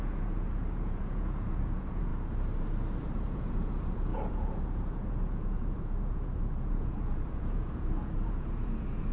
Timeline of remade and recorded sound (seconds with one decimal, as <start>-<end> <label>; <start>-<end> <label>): 0.0-2.1 remade; 2.1-3.0 recorded; 3.0-9.1 remade